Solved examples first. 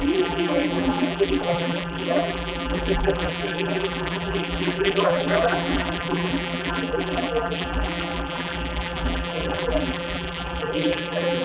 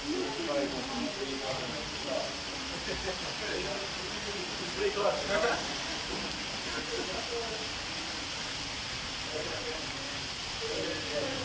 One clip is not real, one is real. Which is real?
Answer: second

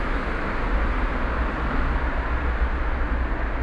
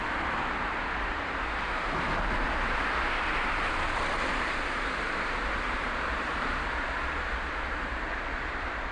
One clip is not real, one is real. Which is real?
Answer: first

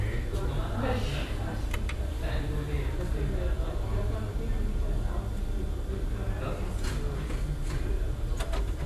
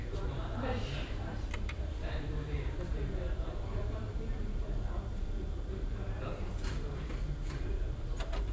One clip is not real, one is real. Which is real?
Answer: first